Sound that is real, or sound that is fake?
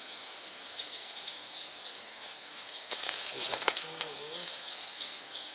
fake